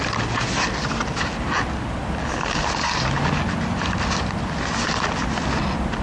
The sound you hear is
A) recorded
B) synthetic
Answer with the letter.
A